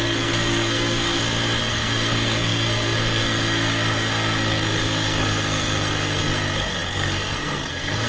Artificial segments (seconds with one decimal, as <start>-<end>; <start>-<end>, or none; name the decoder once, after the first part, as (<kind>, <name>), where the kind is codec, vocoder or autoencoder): 0.0-1.2 (codec, SNAC); 1.7-8.1